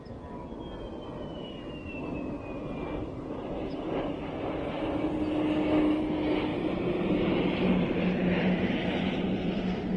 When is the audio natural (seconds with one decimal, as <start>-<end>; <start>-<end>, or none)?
0.0-1.3; 1.9-6.5; 9.5-10.0